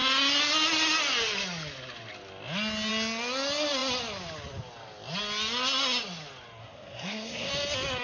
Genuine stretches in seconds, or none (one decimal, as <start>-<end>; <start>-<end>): 0.0-6.6; 7.5-8.0